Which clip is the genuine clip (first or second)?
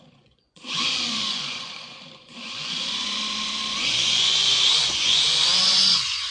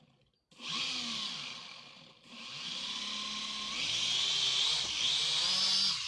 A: second